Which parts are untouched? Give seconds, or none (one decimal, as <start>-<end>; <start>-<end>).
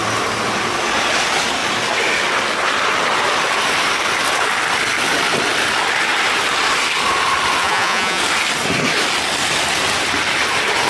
0.0-7.6; 8.2-10.9